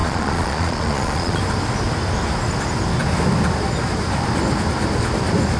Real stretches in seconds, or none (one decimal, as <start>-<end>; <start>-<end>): 1.4-5.6